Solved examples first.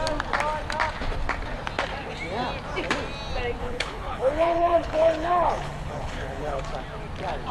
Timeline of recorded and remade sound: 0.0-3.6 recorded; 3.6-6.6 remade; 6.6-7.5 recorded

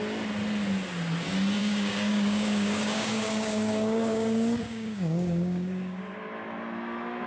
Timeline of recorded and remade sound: 0.0-1.6 recorded; 1.6-6.0 remade; 6.0-7.3 recorded

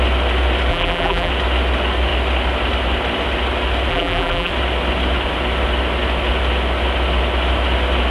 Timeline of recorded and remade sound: 0.0-0.7 recorded; 0.7-1.3 remade; 1.3-3.9 recorded; 3.9-4.5 remade; 4.5-8.1 recorded